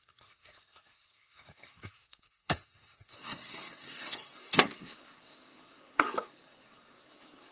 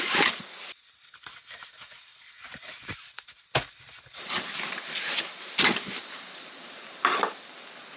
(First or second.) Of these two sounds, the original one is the second